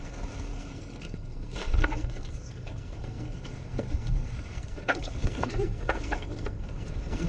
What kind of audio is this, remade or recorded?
remade